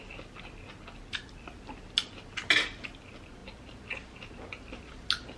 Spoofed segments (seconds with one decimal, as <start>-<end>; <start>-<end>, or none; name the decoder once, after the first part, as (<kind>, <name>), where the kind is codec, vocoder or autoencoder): none